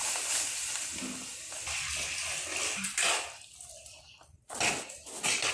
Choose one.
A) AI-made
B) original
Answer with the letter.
B